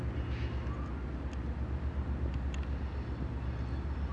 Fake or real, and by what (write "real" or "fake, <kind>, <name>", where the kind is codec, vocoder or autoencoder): real